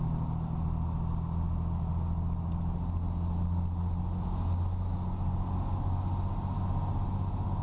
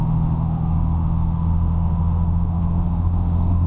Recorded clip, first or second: first